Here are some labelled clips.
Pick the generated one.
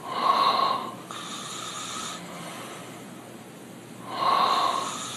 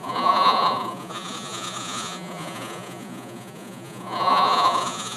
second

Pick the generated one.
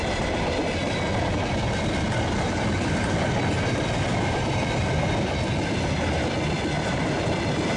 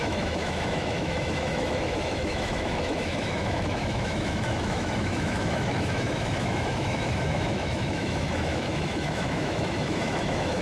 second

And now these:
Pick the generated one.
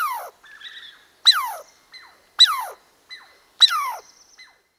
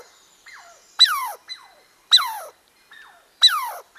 second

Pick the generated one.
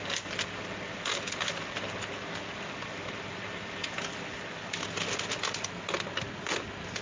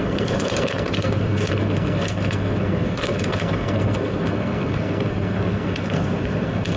second